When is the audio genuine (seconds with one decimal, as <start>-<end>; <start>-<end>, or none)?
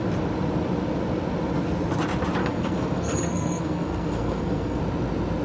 0.0-2.4; 4.8-5.4